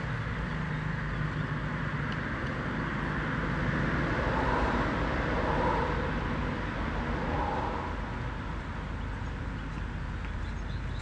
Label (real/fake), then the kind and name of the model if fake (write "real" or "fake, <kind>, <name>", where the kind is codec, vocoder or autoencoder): real